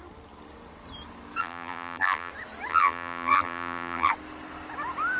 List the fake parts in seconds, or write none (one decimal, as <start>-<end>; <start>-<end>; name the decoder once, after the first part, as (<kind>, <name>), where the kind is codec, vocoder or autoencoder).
1.4-2.3 (vocoder, BigVGAN v2); 2.7-4.1